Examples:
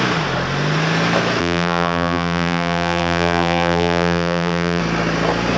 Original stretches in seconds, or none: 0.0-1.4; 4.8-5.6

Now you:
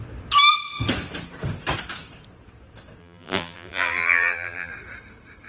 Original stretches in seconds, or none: 0.0-3.0; 4.7-5.5

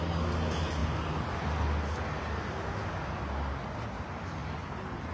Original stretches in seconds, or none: 0.0-5.1

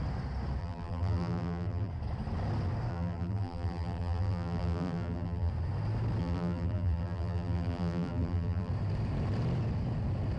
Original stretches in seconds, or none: 0.0-0.6; 1.9-2.9; 5.5-6.2; 8.7-10.4

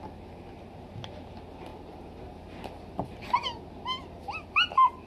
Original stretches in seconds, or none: 0.0-5.1

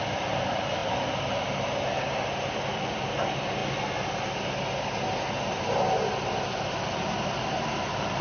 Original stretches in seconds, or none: 0.8-3.2; 3.6-5.2